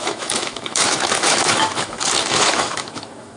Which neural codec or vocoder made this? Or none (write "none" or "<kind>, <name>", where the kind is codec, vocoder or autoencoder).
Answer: autoencoder, DAC-VAE